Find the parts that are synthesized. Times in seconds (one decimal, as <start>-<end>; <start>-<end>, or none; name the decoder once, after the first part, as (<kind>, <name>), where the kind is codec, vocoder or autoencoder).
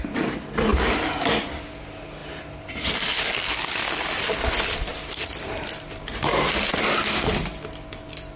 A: 0.7-1.4 (vocoder, BigVGAN v2); 4.9-6.6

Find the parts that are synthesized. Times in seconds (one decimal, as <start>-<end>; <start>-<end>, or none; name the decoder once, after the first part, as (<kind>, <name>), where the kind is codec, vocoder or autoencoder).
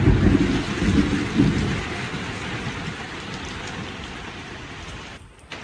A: 0.6-3.9 (vocoder, BigVGAN v2)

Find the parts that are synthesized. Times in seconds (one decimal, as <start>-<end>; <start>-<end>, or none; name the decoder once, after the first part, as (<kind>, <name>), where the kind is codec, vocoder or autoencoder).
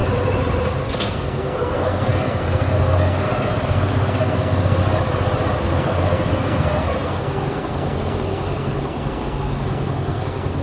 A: 0.8-4.8 (codec, SNAC); 5.6-10.6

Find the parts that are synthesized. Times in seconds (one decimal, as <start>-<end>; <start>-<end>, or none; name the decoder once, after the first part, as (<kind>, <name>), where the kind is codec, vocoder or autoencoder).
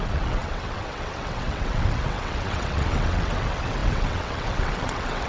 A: 0.0-5.3 (vocoder, WaveNeXt)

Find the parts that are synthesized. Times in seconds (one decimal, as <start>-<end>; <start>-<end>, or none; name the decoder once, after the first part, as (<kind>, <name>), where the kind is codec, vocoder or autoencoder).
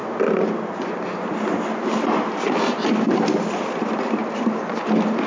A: none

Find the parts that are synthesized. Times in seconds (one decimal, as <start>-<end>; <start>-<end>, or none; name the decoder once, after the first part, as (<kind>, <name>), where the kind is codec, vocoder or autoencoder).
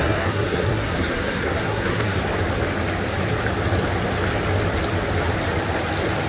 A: 0.0-2.2 (codec, SNAC)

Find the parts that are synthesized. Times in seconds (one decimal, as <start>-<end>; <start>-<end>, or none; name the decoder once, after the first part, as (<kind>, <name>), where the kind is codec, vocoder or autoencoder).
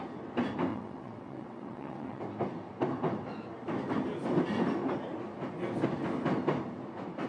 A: 0.7-2.2 (vocoder, WaveNeXt)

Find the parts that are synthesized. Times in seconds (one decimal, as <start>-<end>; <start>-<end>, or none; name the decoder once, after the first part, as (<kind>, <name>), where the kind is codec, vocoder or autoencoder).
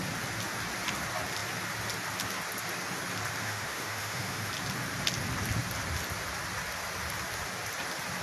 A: 3.4-4.5 (autoencoder, DAC-VAE)